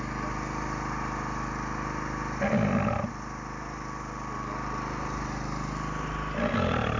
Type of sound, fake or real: real